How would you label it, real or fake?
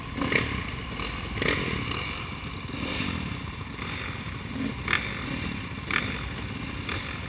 real